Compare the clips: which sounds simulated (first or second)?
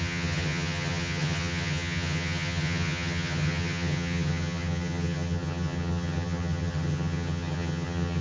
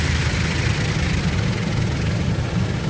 first